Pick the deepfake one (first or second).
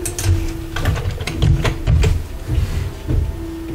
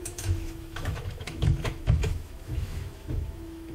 second